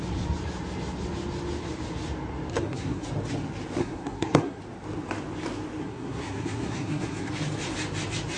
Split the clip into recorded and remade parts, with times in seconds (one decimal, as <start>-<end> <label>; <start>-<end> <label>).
0.0-2.5 recorded; 2.5-3.1 remade; 3.1-3.8 recorded; 3.8-4.6 remade; 4.6-5.8 recorded; 5.8-7.3 remade; 7.3-8.4 recorded